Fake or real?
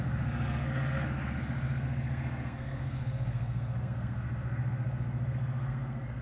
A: fake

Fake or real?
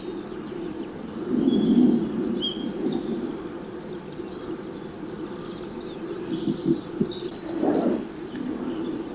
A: real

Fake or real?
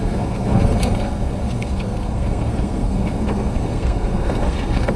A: fake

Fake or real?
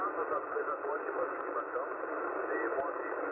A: real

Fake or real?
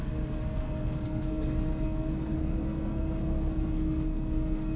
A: fake